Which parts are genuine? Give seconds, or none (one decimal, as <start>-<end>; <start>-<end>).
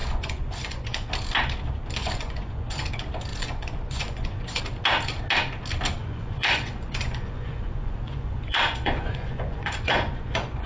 1.1-2.0; 2.9-3.3; 4.6-6.0